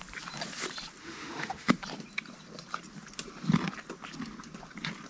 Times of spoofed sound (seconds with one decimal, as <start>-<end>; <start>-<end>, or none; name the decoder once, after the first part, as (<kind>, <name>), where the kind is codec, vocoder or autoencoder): 1.0-1.7 (autoencoder, DAC-VAE)